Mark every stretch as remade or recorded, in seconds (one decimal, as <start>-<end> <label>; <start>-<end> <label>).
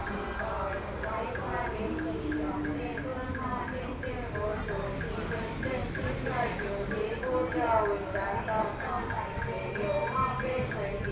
0.0-11.1 recorded